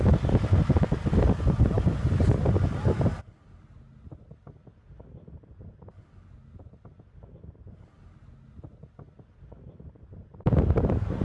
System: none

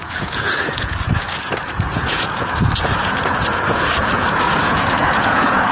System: vocoder, Vocos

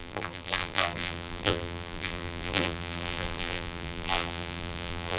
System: vocoder, BigVGAN v2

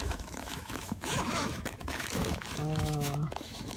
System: autoencoder, DAC-VAE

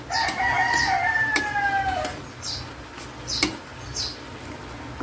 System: none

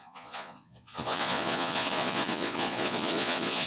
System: vocoder, Vocos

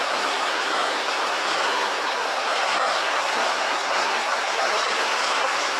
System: codec, SNAC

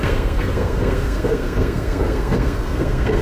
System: codec, SNAC